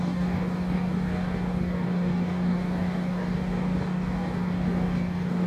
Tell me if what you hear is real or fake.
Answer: fake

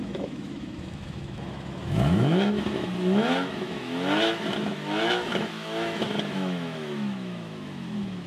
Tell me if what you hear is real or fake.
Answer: fake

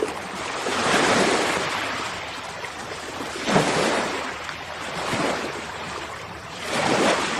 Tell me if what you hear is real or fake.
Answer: fake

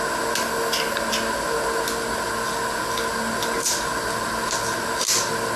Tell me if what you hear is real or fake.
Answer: real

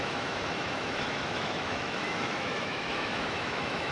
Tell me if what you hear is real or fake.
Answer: fake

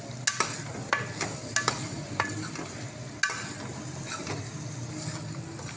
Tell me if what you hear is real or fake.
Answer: real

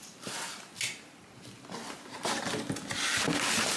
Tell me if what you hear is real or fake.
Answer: real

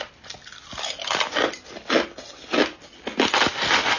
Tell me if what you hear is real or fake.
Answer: real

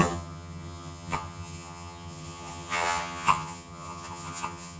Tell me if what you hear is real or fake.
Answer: fake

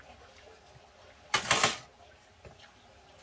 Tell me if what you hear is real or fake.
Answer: real